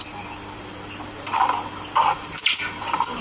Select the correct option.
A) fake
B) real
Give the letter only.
B